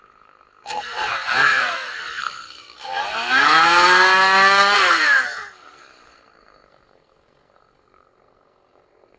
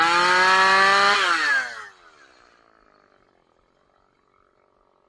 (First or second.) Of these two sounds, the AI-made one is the first